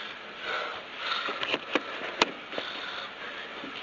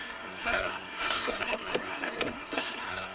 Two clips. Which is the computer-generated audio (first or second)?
second